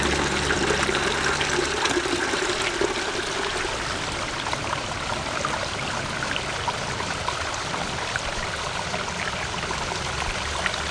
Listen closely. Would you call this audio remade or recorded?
recorded